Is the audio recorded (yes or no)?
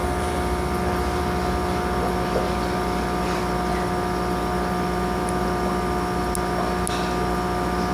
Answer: yes